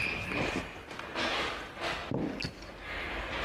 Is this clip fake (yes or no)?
no